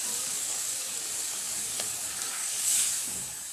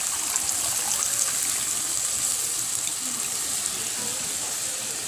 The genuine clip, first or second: second